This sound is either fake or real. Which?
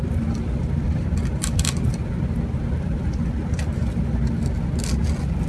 real